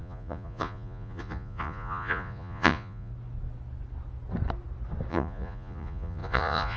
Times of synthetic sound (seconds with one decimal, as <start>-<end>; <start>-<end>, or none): 0.0-3.1; 5.1-6.8